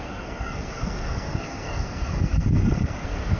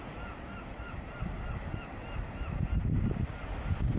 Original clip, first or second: second